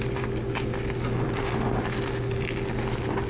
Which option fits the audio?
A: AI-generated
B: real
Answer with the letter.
B